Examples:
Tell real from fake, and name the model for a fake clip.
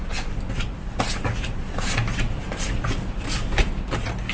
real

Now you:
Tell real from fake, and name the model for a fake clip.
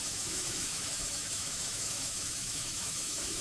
fake, autoencoder, DAC-VAE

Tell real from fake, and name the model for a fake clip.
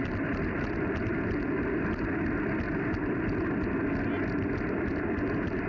real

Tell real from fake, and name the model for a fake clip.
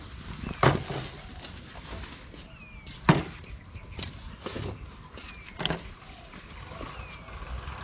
real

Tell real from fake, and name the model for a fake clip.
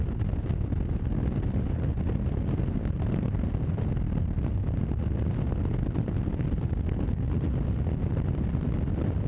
real